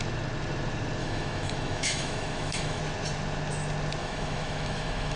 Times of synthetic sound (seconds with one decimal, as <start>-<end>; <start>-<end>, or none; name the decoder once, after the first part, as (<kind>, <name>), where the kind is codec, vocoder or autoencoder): 1.0-2.8 (autoencoder, DAC-VAE); 4.0-5.2